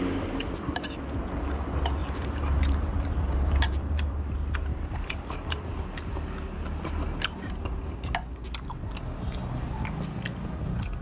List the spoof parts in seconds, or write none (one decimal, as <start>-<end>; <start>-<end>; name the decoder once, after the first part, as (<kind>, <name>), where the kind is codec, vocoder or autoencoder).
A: 2.0-4.2 (vocoder, BigVGAN v2); 4.7-5.5

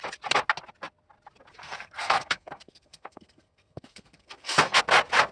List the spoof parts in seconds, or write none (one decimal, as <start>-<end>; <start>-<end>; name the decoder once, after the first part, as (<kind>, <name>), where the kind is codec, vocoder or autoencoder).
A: 1.6-4.8 (codec, SNAC)

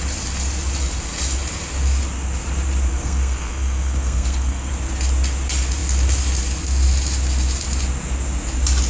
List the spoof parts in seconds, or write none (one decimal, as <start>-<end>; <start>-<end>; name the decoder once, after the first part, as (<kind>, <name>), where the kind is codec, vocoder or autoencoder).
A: 2.9-4.7 (codec, SNAC)

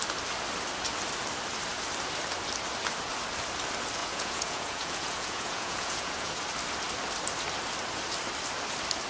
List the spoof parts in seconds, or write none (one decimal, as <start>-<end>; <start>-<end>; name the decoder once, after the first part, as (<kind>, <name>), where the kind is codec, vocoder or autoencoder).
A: 4.0-6.4 (vocoder, Vocos)